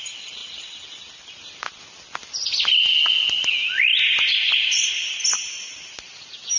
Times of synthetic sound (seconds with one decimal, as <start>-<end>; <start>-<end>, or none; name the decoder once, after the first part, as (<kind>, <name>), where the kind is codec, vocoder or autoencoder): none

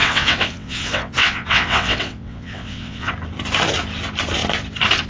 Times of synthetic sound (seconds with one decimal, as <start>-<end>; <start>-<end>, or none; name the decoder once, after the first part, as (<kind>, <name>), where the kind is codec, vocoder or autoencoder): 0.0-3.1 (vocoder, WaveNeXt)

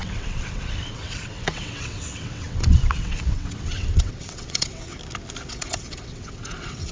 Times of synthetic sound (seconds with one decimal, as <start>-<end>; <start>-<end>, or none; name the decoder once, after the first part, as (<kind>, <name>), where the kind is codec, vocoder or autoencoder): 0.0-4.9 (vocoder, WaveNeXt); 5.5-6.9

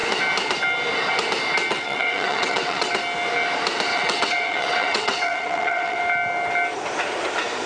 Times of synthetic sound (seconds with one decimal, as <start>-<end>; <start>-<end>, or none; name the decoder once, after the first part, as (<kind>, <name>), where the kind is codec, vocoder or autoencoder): 1.7-2.9 (vocoder, WaveNeXt); 3.9-6.0

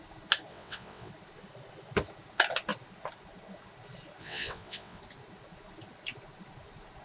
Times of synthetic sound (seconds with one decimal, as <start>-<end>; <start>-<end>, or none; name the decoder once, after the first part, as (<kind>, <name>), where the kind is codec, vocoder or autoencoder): 0.5-1.1 (vocoder, WaveNeXt); 4.2-5.0

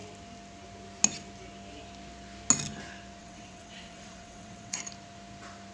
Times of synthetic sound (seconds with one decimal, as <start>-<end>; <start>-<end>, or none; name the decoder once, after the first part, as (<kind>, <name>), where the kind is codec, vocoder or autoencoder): 3.2-4.8 (vocoder, WaveNeXt)

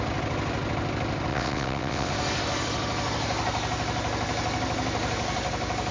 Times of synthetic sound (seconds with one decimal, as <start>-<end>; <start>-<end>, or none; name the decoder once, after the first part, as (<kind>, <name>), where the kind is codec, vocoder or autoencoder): 1.3-2.1 (vocoder, WaveNeXt)

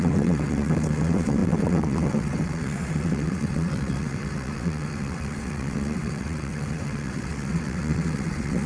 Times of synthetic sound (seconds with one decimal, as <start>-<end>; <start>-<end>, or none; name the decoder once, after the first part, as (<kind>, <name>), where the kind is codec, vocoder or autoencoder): 0.0-8.7 (vocoder, WaveNeXt)